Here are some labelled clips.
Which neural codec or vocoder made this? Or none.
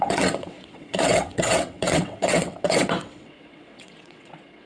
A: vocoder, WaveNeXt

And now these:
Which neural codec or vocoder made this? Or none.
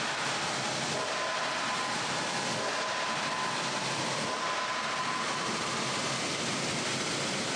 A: none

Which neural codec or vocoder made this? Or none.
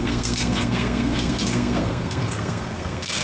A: codec, SNAC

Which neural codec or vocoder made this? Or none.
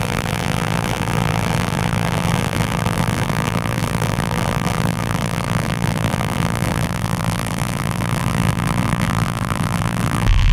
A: vocoder, BigVGAN v2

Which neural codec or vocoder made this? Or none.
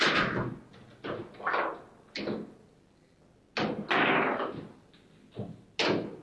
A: none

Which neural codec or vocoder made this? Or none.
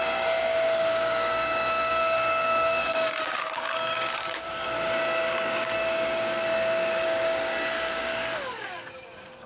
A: codec, DAC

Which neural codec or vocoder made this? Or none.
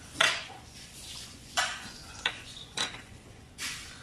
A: vocoder, Vocos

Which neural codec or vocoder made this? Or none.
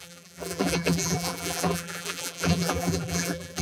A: vocoder, BigVGAN v2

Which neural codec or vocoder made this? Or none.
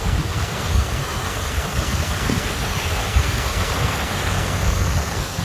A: codec, SNAC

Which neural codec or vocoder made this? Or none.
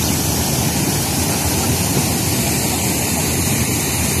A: none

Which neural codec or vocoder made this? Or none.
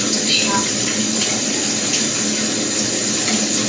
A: none